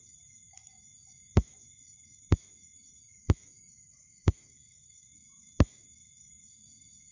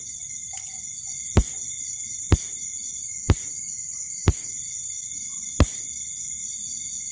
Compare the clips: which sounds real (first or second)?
second